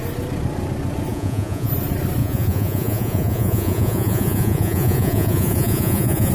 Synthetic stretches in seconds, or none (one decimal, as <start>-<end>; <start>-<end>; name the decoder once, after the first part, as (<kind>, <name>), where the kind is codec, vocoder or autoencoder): 1.1-1.7 (vocoder, Vocos); 2.2-6.3